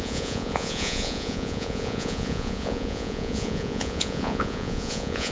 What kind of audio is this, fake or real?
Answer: fake